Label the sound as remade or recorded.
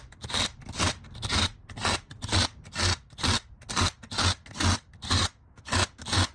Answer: recorded